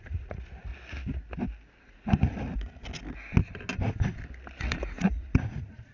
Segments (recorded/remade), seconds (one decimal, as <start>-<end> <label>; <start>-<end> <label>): 0.0-0.7 remade; 0.7-1.9 recorded; 1.9-2.5 remade; 2.5-4.6 recorded; 4.6-5.9 remade